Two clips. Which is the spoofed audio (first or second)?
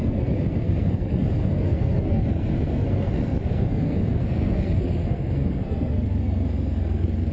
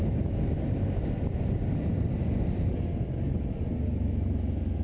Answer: first